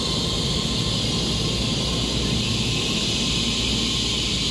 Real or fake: real